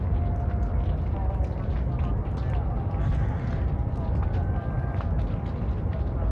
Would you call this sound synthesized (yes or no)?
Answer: no